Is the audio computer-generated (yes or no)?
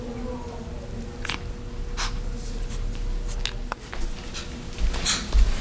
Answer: no